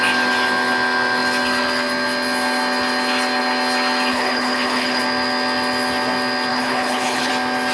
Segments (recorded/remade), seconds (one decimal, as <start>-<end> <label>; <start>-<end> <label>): 0.0-4.1 recorded; 4.1-5.0 remade; 5.0-6.5 recorded; 6.5-7.3 remade; 7.3-7.7 recorded